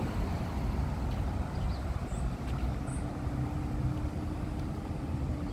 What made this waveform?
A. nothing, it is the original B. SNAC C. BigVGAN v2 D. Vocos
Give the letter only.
A